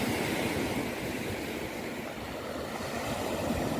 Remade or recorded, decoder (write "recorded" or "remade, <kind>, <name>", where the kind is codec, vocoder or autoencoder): recorded